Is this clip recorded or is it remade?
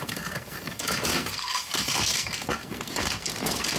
remade